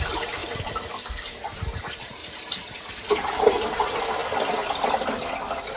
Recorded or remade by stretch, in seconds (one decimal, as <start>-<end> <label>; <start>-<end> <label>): 0.0-4.2 remade; 4.2-5.8 recorded